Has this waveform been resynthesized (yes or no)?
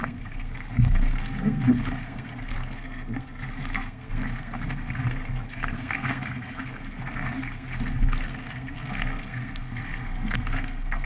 yes